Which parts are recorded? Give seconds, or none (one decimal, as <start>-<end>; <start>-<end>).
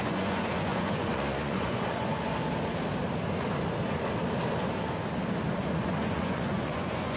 2.3-5.5